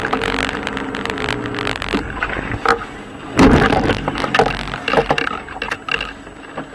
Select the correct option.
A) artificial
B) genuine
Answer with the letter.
B